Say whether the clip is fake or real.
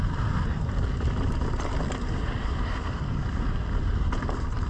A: real